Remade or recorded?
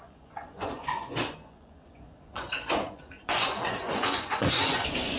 remade